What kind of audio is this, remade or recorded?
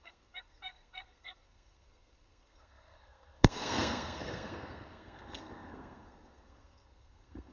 remade